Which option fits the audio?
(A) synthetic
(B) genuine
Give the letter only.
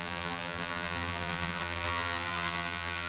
A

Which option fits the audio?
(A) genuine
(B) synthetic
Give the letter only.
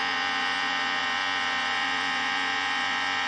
B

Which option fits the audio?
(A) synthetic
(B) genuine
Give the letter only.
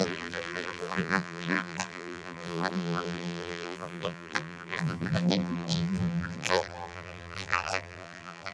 A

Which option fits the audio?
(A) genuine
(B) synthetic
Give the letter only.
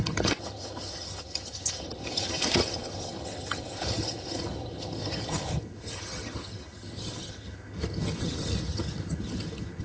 B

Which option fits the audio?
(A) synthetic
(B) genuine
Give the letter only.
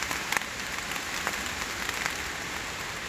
B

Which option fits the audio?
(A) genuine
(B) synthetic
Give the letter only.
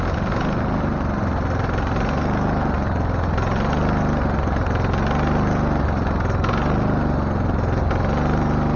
A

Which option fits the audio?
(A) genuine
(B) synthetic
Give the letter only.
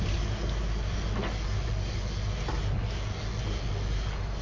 A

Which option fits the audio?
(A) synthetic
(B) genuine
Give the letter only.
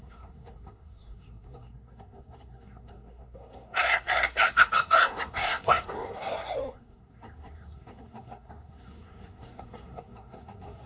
A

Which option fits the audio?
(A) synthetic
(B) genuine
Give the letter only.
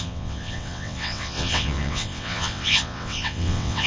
A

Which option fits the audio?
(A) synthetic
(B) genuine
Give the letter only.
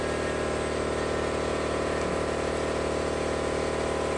B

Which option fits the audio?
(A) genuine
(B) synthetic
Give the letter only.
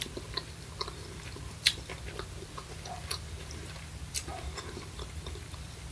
B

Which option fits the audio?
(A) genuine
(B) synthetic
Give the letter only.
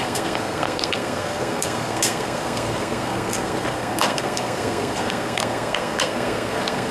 B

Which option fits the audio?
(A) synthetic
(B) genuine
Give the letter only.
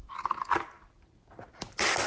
B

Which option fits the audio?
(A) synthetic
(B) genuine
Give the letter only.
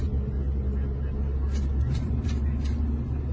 B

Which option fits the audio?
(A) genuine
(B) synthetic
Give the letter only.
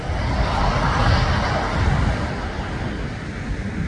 A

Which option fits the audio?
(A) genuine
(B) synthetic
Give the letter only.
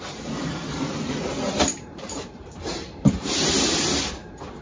B